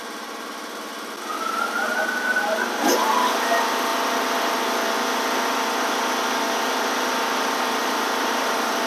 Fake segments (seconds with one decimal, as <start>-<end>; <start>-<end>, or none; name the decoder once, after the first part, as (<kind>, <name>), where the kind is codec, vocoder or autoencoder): 7.8-8.9 (vocoder, BigVGAN v2)